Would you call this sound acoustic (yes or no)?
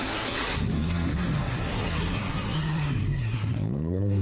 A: no